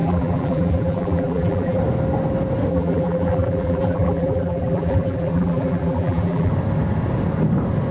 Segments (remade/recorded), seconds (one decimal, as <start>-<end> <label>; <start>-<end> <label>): 0.0-1.8 remade; 1.8-2.7 recorded; 2.7-6.5 remade; 6.5-7.9 recorded